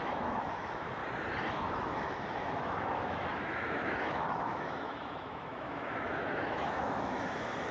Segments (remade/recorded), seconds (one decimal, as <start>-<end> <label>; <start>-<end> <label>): 0.0-1.0 remade; 1.0-1.5 recorded; 1.5-7.7 remade